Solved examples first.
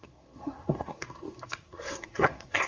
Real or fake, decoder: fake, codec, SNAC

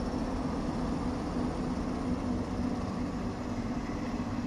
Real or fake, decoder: real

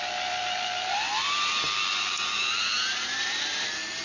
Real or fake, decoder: fake, vocoder, BigVGAN v2